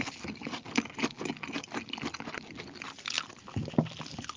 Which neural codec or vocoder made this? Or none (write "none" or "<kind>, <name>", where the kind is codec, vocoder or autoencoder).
none